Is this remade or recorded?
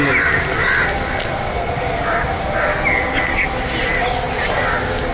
recorded